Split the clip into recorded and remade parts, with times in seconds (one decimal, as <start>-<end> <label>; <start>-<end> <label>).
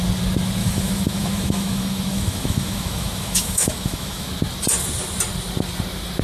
0.0-0.6 recorded; 0.6-4.3 remade; 4.3-6.2 recorded